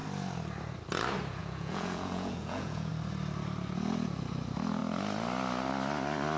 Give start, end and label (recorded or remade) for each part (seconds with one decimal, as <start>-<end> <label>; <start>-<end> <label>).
0.0-1.4 recorded; 1.4-2.9 remade; 2.9-6.4 recorded